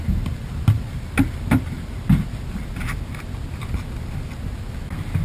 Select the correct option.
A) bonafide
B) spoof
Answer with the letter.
A